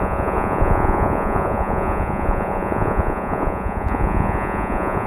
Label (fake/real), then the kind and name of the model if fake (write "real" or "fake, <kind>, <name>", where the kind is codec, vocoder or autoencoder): fake, vocoder, Vocos